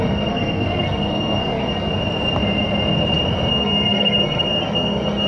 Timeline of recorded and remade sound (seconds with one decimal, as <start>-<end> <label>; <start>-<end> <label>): 0.0-1.9 remade; 1.9-3.5 recorded; 3.5-5.3 remade